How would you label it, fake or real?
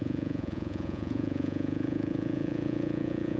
fake